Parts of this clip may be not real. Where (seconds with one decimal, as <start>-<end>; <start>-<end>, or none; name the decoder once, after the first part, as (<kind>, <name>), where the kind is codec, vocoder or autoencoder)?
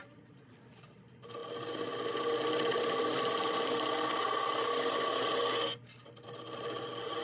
none